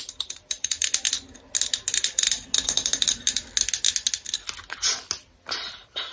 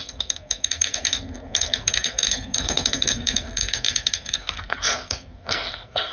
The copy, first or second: second